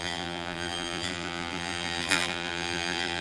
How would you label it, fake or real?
fake